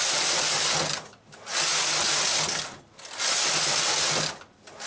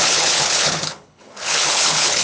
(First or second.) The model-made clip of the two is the second